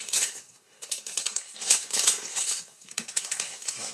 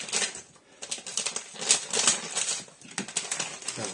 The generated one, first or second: first